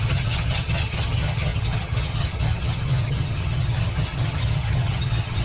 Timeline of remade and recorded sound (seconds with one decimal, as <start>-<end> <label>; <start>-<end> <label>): 0.0-5.4 remade